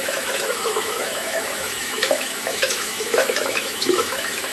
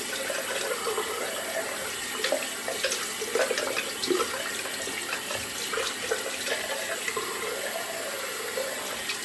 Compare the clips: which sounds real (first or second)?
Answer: second